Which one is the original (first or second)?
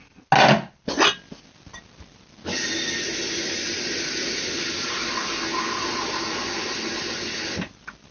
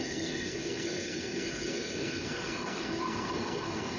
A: first